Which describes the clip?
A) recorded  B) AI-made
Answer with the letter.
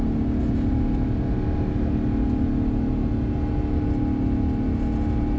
A